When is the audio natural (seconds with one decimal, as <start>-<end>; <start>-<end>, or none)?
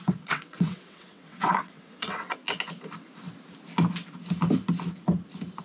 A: 2.4-5.6